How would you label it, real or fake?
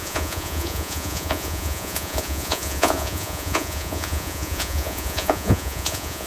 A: fake